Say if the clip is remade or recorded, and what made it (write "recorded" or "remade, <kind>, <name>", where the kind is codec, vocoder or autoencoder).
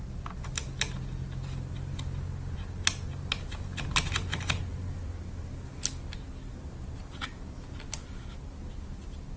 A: recorded